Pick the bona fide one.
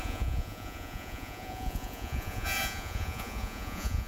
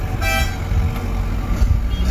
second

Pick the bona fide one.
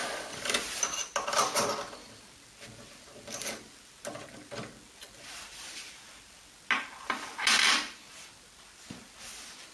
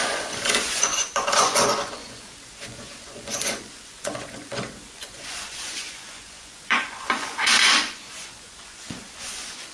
first